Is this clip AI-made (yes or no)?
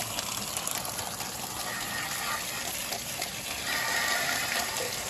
no